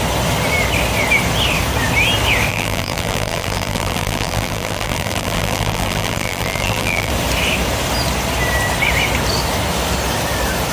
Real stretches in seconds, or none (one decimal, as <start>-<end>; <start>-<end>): 0.0-2.5; 7.1-10.7